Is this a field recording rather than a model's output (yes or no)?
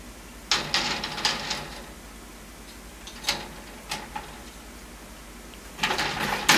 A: yes